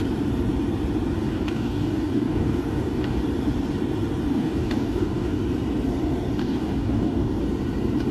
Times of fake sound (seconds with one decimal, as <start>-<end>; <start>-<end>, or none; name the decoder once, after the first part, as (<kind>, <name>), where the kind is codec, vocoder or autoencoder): 1.2-3.2 (codec, DAC); 4.3-5.4; 6.4-7.4